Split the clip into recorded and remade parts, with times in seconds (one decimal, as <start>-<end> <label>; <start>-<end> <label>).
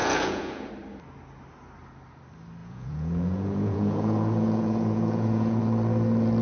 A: 0.0-0.7 remade; 0.7-2.6 recorded; 2.6-5.6 remade; 5.6-6.4 recorded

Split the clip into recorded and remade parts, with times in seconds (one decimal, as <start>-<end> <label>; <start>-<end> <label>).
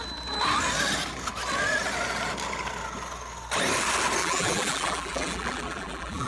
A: 0.0-4.2 recorded; 4.2-6.3 remade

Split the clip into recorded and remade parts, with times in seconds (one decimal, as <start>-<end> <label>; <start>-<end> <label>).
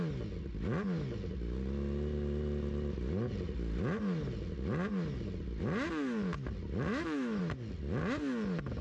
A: 0.0-6.9 recorded; 6.9-7.4 remade; 7.4-8.8 recorded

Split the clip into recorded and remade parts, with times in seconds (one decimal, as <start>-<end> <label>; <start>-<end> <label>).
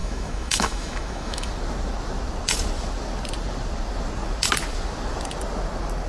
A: 0.0-1.5 remade; 1.5-6.1 recorded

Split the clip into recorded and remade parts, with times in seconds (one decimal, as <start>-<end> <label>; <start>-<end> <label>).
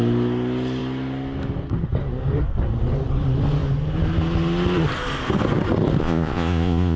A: 0.0-6.0 recorded; 6.0-7.0 remade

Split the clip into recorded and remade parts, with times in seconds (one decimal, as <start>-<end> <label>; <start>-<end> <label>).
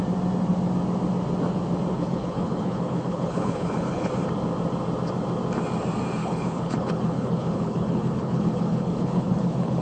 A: 0.0-1.9 recorded; 1.9-4.1 remade; 4.1-6.2 recorded; 6.2-9.8 remade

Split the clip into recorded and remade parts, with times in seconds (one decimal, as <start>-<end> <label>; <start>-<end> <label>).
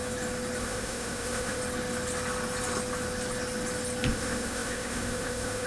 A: 0.0-0.6 recorded; 0.6-1.6 remade; 1.6-4.1 recorded; 4.1-5.7 remade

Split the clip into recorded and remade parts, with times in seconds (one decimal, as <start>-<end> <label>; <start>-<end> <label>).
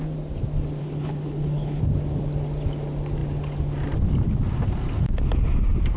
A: 0.0-0.8 recorded; 0.8-1.8 remade; 1.8-6.0 recorded